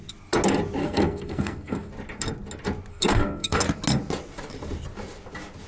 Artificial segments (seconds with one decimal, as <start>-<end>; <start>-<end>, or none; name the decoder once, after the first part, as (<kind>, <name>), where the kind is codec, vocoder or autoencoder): 0.8-1.9 (codec, SNAC); 2.9-3.6